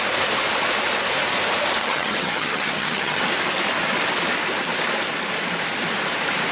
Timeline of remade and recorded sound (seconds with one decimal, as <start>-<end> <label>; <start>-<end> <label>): 0.0-1.8 recorded; 1.8-3.2 remade; 3.2-6.5 recorded